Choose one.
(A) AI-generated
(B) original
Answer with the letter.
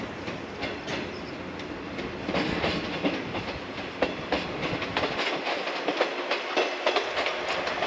B